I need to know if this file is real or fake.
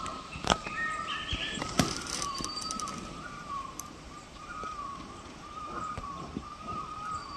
fake